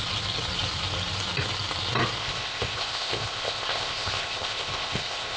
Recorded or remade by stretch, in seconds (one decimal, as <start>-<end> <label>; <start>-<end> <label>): 0.0-2.2 recorded; 2.2-5.4 remade